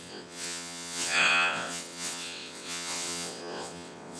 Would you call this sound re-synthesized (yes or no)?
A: yes